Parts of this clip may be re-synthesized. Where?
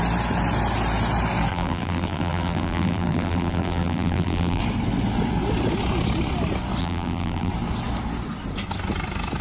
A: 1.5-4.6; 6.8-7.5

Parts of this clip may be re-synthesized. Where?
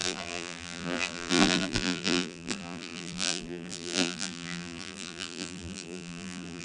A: 0.0-6.6